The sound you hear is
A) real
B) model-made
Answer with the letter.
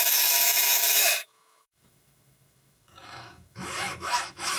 B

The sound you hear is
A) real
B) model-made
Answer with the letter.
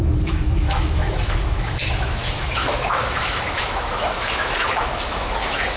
B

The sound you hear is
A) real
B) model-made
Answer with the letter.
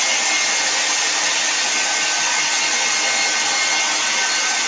A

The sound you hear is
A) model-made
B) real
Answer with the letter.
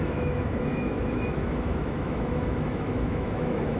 A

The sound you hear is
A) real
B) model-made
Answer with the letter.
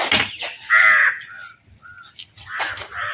A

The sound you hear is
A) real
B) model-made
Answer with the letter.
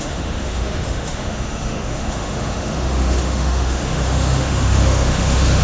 B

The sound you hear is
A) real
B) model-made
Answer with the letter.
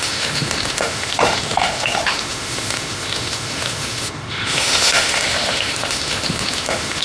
B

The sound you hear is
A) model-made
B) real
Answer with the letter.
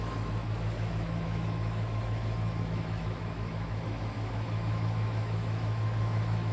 A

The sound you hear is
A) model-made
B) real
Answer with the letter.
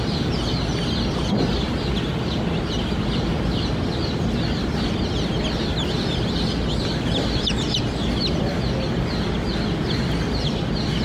B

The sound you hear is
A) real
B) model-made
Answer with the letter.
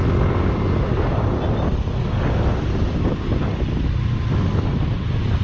A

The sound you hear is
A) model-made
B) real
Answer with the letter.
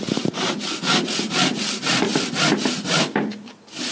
B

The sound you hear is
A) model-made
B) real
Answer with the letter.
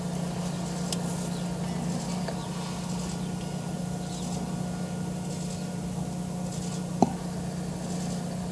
B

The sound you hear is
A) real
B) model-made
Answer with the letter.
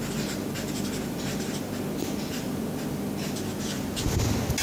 A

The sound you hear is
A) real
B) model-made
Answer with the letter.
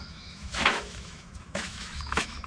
B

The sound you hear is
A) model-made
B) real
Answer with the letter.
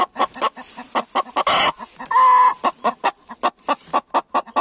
B